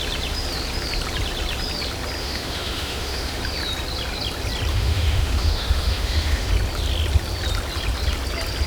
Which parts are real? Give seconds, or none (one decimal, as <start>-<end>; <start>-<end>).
0.0-2.2; 3.4-4.7; 6.5-8.7